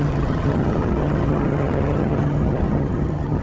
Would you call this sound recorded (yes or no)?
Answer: no